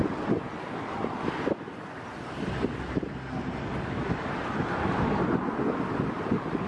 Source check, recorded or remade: recorded